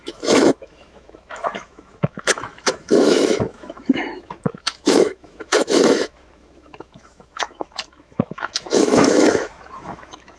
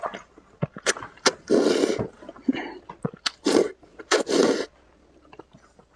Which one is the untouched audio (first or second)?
second